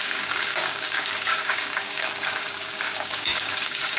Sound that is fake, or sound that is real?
fake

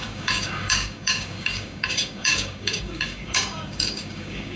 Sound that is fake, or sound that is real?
fake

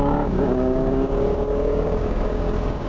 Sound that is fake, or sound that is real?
fake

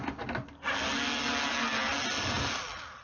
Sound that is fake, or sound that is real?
real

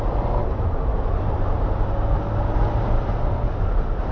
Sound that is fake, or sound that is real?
real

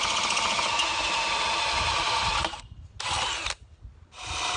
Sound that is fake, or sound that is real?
real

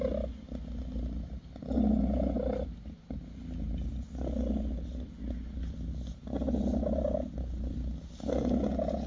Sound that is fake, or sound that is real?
real